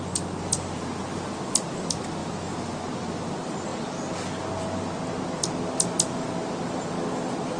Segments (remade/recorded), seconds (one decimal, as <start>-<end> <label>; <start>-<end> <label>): 0.0-7.6 recorded